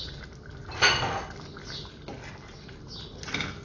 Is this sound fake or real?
real